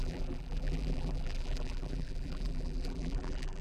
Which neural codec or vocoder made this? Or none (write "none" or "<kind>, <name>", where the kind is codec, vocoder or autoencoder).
vocoder, BigVGAN v2